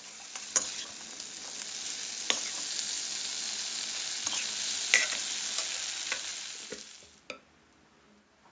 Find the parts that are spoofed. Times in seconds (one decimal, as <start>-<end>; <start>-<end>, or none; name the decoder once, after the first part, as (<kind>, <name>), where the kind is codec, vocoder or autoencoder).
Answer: none